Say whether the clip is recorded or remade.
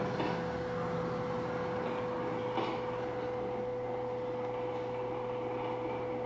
recorded